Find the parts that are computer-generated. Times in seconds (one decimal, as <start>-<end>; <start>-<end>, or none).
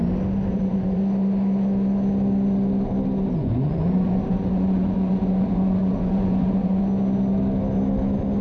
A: 0.5-1.0; 3.4-6.8